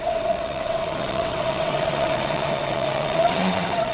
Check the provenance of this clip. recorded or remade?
remade